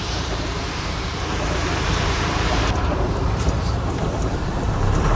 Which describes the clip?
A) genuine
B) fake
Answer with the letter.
B